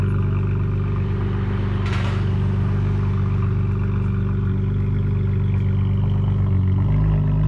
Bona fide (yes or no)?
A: yes